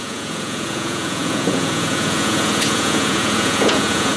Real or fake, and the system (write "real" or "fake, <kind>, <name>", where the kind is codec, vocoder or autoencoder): fake, vocoder, Vocos